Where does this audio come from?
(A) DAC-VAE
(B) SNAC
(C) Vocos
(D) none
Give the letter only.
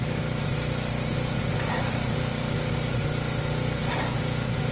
D